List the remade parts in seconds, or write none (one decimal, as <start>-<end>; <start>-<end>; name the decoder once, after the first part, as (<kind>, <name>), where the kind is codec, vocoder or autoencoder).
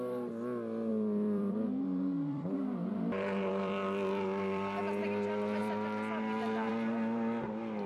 0.9-4.8 (vocoder, BigVGAN v2); 5.6-6.7